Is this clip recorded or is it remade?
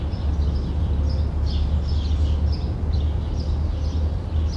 recorded